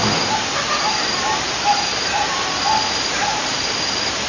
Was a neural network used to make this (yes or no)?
no